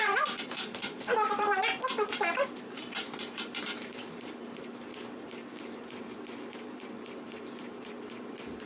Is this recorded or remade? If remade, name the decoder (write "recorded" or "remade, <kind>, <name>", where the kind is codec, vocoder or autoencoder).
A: remade, vocoder, BigVGAN v2